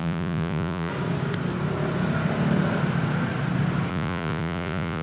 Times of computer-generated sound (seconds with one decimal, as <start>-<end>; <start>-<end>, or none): 0.0-0.9; 3.9-5.0

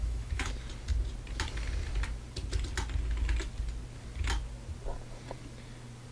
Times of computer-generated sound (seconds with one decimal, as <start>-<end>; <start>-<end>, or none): 0.0-0.5

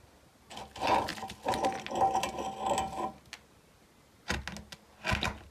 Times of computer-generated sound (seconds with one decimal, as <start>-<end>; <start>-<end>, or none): none

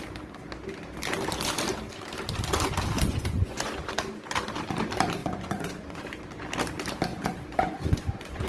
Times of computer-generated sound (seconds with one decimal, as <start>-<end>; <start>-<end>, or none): 3.1-3.7; 5.2-6.0; 7.1-8.5

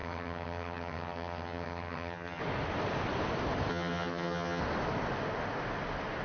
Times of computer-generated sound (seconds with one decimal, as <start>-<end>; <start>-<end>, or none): 0.0-2.4; 3.7-4.6

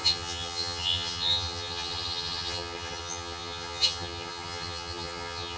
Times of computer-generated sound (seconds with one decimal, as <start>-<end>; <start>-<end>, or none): 0.0-5.6